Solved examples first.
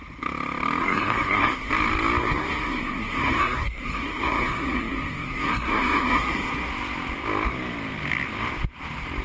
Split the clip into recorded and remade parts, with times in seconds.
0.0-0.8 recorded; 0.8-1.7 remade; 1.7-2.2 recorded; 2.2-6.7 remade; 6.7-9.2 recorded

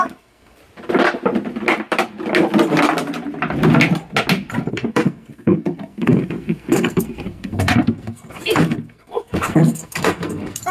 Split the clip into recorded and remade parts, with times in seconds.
0.0-0.6 remade; 0.6-4.7 recorded; 4.7-10.7 remade

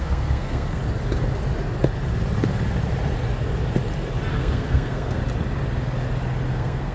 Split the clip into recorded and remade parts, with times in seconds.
0.0-0.8 remade; 0.8-4.3 recorded; 4.3-5.2 remade; 5.2-6.5 recorded; 6.5-6.9 remade

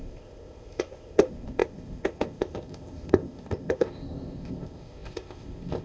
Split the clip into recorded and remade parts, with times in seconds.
0.0-5.8 remade

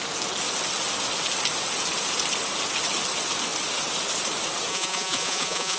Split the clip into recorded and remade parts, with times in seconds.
0.0-4.7 recorded; 4.7-5.8 remade